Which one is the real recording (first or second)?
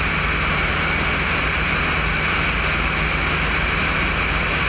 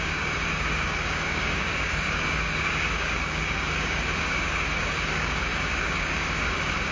first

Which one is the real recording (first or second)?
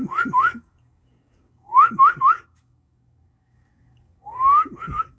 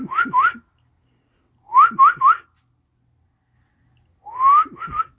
second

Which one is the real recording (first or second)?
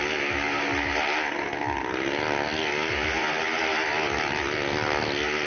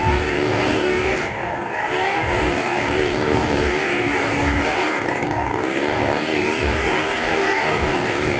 first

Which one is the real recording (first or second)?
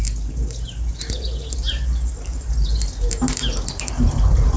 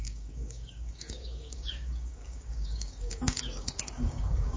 first